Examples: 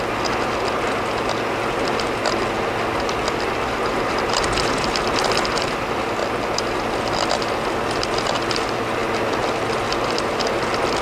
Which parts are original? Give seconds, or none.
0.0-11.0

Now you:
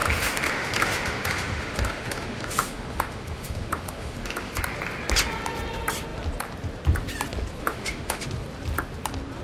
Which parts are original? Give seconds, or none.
4.6-7.6; 8.2-9.4